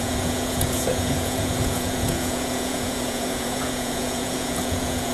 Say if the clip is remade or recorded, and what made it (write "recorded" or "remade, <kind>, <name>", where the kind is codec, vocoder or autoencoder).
remade, vocoder, Vocos